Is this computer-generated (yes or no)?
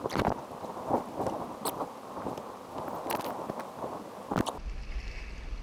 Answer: no